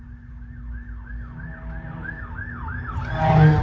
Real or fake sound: real